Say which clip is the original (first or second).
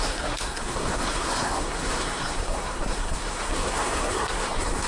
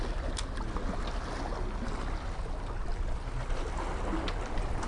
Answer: second